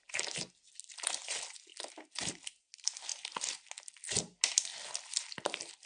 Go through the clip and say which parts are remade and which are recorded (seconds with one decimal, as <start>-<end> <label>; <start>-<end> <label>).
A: 0.0-5.9 recorded